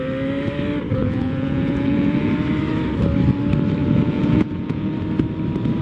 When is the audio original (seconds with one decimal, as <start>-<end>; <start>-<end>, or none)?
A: 0.0-1.0; 2.3-3.8; 4.9-5.8